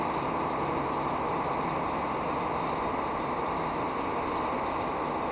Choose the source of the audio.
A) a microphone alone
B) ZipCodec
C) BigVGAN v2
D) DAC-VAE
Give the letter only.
A